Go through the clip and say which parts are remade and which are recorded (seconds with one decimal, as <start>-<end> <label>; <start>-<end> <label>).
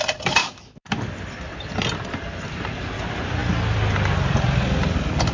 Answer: 0.0-0.4 recorded; 0.4-0.9 remade; 0.9-5.3 recorded